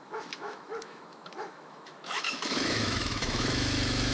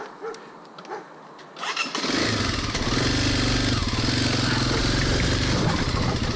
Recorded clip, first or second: second